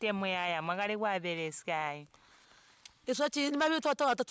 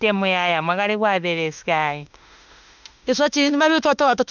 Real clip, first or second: first